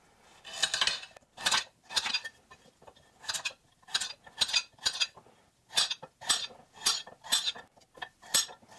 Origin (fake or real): real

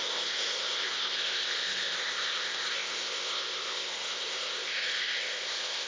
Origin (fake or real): fake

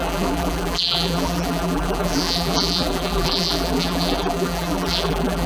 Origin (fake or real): fake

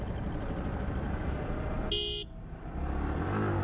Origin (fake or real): real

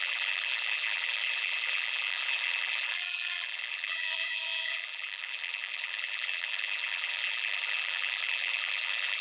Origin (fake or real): fake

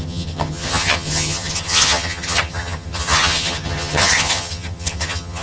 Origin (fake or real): fake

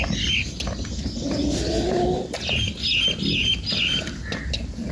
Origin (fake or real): real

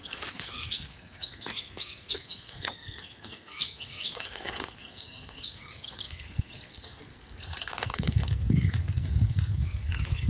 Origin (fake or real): fake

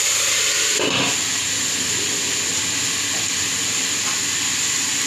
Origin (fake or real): real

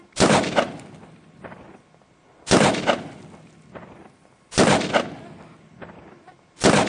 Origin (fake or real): fake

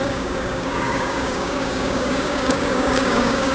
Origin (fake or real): fake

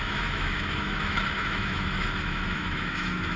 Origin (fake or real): fake